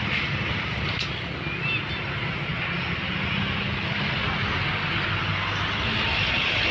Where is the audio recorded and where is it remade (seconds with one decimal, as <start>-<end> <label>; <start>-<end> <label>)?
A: 0.0-6.7 recorded